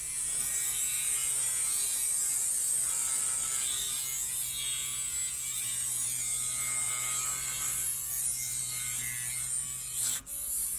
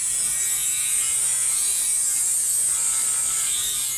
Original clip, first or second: first